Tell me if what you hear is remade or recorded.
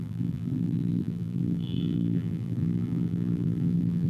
remade